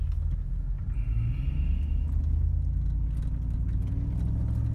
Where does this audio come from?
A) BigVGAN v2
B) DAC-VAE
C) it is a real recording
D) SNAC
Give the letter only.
C